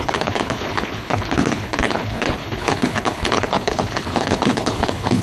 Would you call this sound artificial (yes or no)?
yes